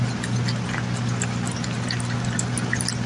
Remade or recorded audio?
recorded